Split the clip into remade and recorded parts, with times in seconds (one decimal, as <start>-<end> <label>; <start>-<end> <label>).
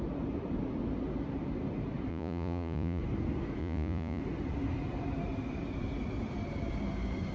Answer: 0.0-2.1 recorded; 2.1-3.0 remade; 3.0-3.6 recorded; 3.6-4.2 remade; 4.2-7.3 recorded